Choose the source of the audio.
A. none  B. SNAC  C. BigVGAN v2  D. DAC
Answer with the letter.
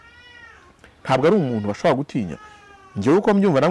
C